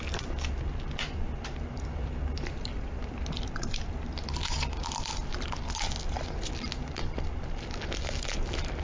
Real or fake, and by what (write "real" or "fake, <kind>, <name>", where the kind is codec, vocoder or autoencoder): real